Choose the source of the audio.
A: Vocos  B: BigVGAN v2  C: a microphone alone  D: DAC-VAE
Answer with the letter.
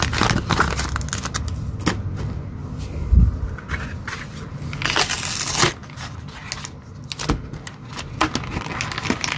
C